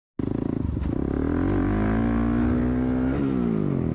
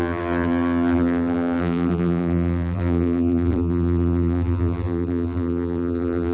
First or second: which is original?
first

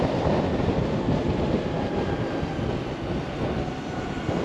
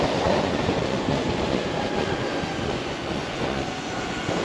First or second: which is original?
first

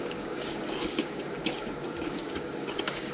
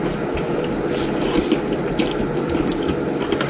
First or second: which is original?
second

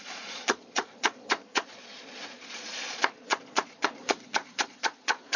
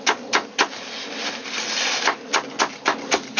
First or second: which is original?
second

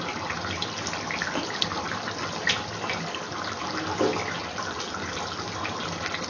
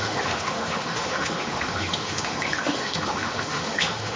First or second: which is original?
first